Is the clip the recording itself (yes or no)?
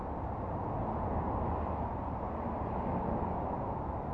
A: yes